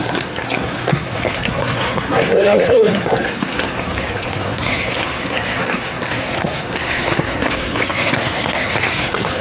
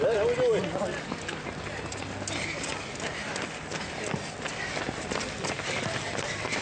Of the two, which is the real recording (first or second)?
second